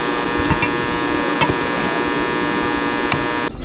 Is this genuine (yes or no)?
yes